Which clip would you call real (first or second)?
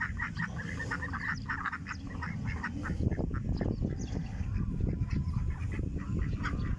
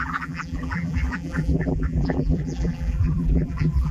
first